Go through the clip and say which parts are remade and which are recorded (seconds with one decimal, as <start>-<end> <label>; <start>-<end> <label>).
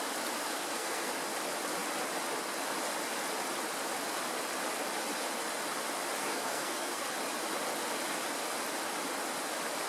0.0-0.4 recorded; 0.4-1.1 remade; 1.1-6.2 recorded; 6.2-7.1 remade; 7.1-9.9 recorded